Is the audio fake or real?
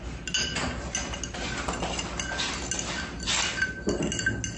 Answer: real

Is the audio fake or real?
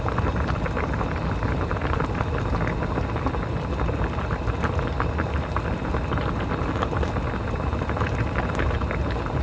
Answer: real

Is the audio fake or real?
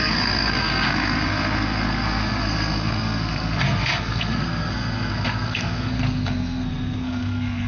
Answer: fake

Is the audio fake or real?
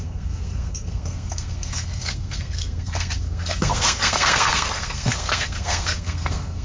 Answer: fake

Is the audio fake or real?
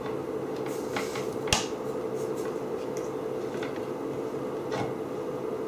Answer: real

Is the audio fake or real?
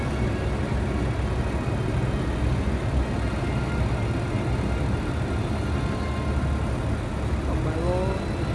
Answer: real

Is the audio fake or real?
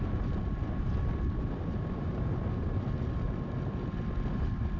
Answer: real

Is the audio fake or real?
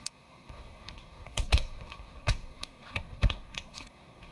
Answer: fake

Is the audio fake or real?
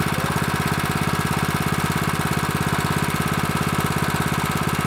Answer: real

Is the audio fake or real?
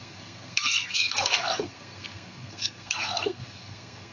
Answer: fake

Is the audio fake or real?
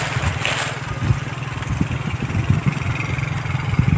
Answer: real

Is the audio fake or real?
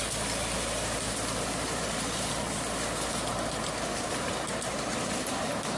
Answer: real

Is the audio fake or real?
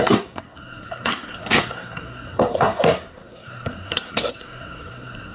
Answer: fake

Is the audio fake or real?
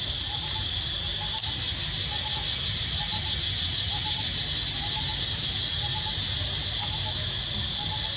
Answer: real